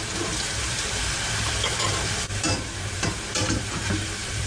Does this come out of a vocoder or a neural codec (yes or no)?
yes